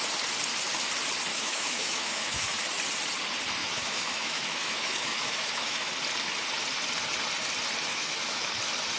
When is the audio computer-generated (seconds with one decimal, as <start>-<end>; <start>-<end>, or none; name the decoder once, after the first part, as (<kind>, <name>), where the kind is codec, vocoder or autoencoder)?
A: 1.3-2.6 (autoencoder, DAC-VAE); 3.6-5.9; 7.9-8.5